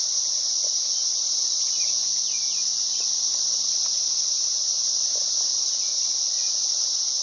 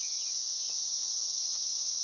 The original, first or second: first